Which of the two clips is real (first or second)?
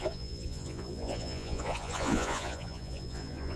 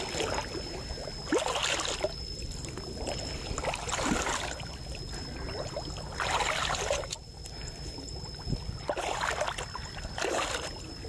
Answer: second